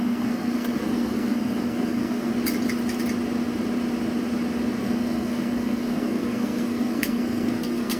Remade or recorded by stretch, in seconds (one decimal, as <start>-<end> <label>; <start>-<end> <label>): 0.0-2.3 remade; 2.3-4.8 recorded; 4.8-8.0 remade